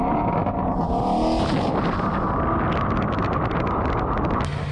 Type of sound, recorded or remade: recorded